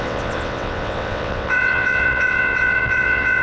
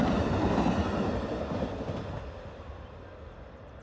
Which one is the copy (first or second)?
first